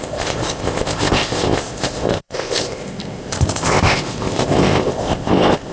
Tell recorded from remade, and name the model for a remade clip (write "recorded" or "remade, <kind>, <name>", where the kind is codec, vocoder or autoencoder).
remade, codec, ZipCodec